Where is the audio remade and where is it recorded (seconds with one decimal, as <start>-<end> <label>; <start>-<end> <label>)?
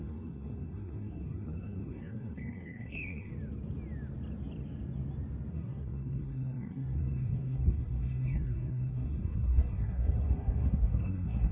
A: 0.0-3.3 remade; 3.3-5.5 recorded; 5.5-11.5 remade